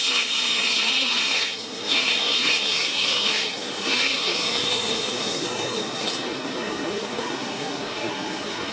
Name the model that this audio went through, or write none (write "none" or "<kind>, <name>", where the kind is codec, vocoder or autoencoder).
codec, SNAC